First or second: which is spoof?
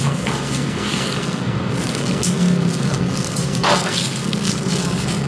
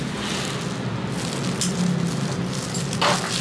first